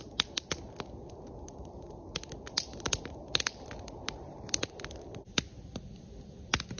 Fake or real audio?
real